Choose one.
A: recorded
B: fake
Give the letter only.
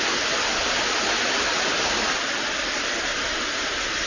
A